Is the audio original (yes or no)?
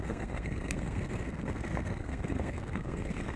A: no